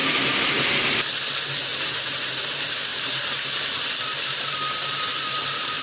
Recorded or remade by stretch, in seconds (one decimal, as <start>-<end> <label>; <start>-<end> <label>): 0.0-0.6 remade; 0.6-1.7 recorded; 1.7-2.4 remade; 2.4-2.9 recorded; 2.9-3.8 remade; 3.8-5.8 recorded